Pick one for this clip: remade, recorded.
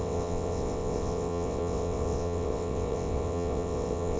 remade